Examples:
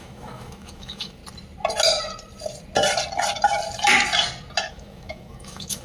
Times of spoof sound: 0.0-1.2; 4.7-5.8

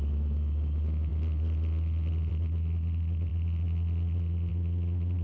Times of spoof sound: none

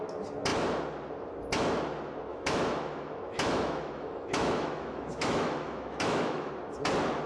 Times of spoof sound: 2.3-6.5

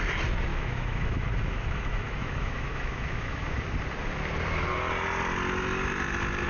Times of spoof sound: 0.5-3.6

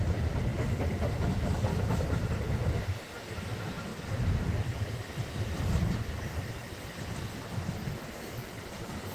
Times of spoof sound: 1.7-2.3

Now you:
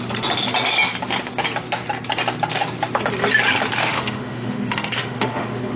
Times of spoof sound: 3.8-5.8

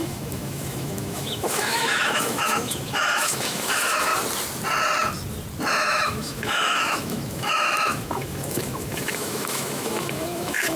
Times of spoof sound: 0.0-4.1; 5.7-10.8